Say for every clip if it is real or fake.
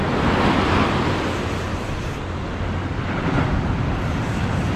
real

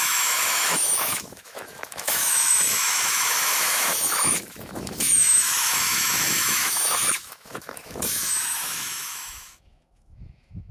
fake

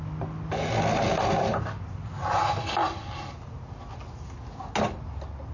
real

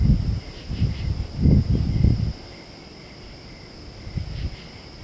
real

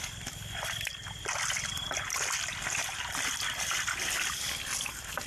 real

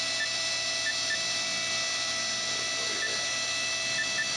real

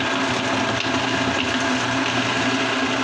real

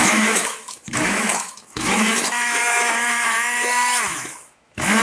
fake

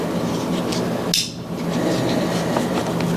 real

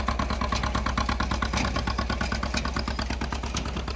real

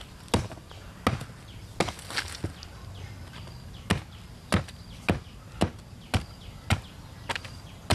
real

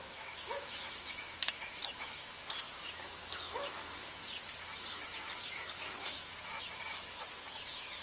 fake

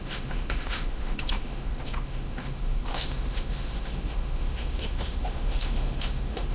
fake